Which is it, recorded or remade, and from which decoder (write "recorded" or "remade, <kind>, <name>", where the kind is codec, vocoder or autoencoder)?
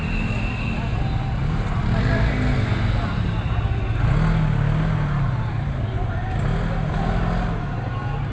recorded